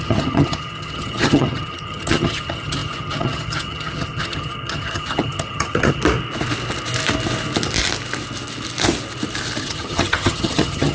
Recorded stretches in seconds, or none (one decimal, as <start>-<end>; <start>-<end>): 6.0-9.6